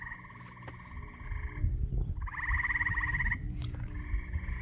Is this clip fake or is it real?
real